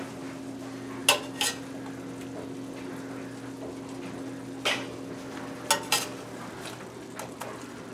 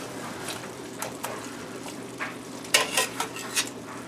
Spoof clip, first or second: second